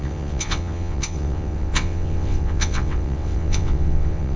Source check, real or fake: fake